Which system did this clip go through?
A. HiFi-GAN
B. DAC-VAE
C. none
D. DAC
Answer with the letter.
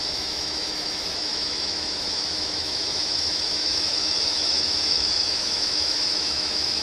B